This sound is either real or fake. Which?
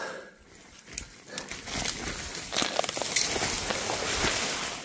real